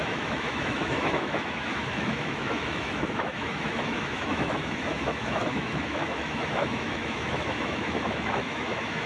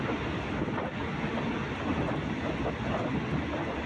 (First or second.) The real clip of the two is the second